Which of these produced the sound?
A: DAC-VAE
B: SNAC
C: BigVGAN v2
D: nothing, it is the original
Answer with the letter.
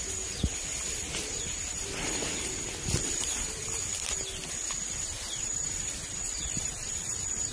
D